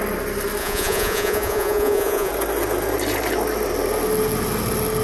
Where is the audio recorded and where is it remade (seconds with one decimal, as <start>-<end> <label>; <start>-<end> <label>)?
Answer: 0.0-0.6 recorded; 0.6-2.3 remade; 2.3-5.0 recorded